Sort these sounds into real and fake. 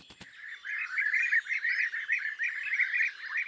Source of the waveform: real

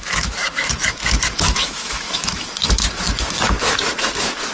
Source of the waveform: fake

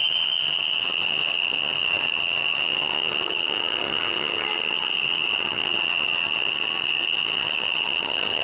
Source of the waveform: fake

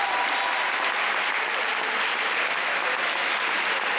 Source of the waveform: real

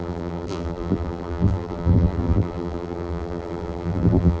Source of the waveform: fake